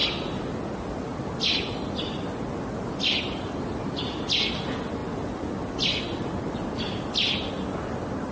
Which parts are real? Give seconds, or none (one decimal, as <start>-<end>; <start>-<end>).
0.0-8.3